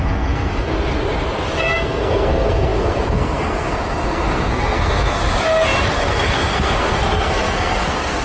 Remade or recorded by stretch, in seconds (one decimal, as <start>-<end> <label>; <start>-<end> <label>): 0.0-0.7 remade; 0.7-1.6 recorded; 1.6-5.2 remade; 5.2-5.9 recorded; 5.9-8.2 remade

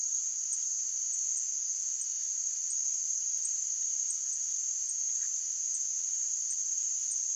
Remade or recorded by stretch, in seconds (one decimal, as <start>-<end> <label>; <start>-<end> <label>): 0.0-7.4 recorded